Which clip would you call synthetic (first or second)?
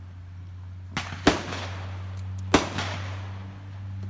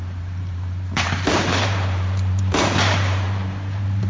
second